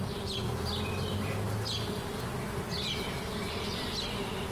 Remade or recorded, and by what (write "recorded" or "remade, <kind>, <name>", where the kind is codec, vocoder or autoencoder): recorded